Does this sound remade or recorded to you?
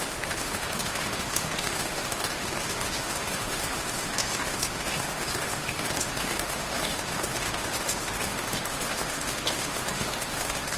remade